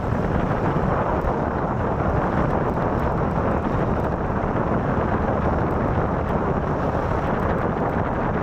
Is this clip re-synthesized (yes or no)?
yes